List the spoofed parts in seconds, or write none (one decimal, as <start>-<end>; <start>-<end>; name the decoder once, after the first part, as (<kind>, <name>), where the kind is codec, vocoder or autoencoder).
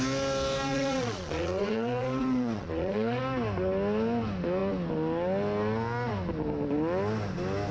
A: 0.7-3.2 (vocoder, Vocos)